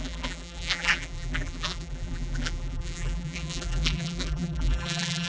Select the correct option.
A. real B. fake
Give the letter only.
B